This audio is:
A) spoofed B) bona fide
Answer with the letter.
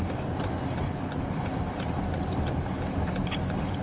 A